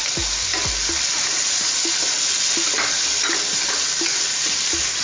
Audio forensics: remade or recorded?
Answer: recorded